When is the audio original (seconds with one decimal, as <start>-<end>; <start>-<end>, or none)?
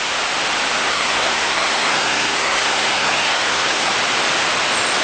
0.0-0.9; 3.9-5.0